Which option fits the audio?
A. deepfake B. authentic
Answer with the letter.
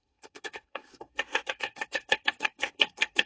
A